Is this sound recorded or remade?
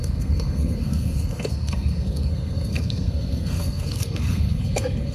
remade